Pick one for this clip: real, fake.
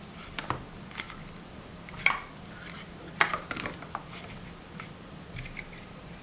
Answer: real